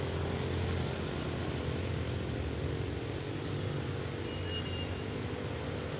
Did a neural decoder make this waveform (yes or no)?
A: no